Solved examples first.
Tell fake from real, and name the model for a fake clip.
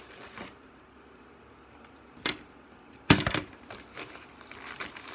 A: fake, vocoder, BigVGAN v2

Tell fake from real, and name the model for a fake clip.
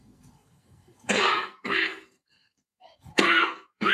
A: fake, codec, SNAC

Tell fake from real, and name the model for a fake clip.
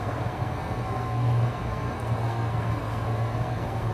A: fake, codec, SNAC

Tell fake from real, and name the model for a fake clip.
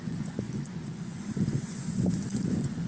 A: fake, vocoder, Vocos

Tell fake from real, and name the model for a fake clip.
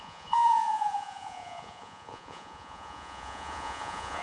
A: fake, vocoder, Vocos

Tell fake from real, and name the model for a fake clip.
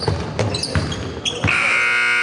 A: real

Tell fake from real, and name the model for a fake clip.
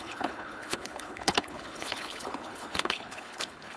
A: fake, codec, HILCodec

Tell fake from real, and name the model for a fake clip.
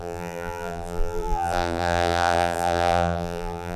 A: fake, vocoder, BigVGAN v2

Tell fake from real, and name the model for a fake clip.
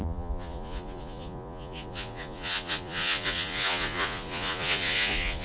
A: fake, vocoder, Vocos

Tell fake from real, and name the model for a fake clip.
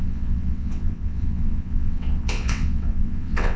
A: fake, vocoder, WaveNeXt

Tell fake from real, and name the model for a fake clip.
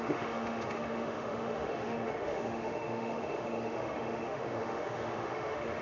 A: fake, autoencoder, DAC-VAE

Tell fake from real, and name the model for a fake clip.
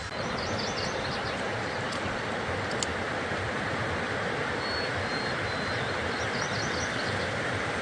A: real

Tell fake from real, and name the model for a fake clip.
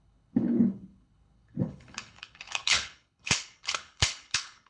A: fake, codec, HILCodec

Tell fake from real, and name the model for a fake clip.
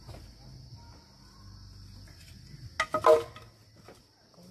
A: real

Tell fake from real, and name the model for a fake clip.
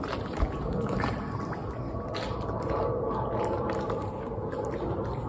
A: real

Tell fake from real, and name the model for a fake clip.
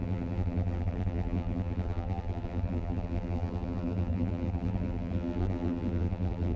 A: fake, vocoder, BigVGAN v2